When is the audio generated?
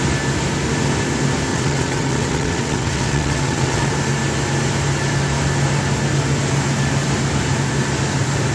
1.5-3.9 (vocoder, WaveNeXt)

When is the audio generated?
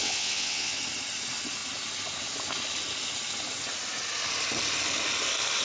0.0-0.8 (vocoder, WaveNeXt)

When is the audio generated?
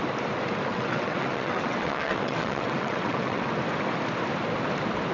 0.7-3.5 (vocoder, WaveNeXt)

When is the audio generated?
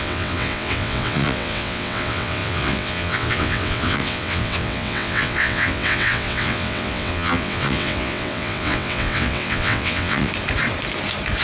0.0-10.3 (vocoder, WaveNeXt)